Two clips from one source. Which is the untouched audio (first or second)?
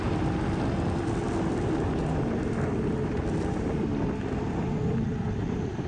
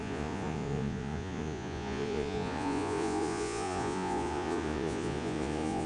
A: first